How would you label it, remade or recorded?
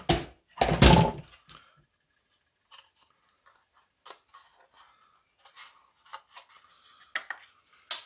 recorded